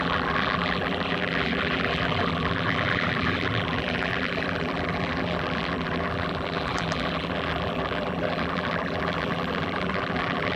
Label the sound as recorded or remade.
remade